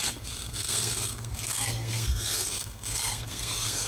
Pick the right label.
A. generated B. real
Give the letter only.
A